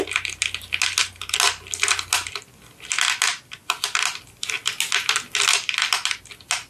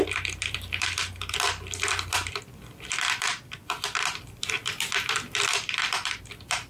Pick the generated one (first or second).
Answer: second